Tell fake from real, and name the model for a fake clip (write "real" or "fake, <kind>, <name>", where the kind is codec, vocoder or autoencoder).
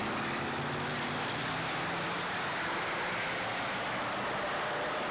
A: real